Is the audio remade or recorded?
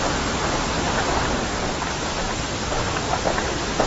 recorded